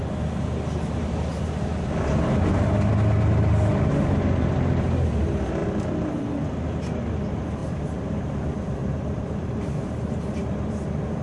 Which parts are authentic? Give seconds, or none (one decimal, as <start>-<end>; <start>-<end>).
0.0-7.6; 8.4-8.8; 10.4-11.2